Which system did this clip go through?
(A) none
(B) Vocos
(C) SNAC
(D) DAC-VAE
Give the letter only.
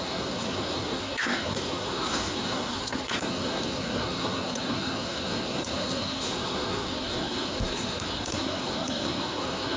C